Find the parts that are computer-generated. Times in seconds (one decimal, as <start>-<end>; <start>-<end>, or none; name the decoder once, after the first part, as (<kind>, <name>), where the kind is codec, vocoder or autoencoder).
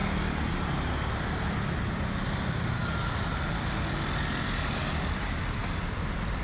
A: 2.2-2.8 (vocoder, BigVGAN v2); 5.1-6.4